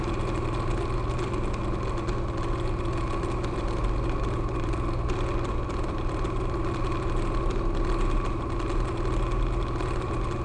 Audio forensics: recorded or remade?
recorded